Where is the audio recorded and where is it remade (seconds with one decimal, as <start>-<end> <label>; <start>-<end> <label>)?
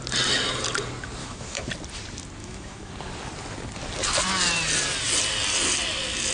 0.0-1.2 recorded; 1.2-1.7 remade; 1.7-2.4 recorded; 2.4-2.9 remade; 2.9-6.3 recorded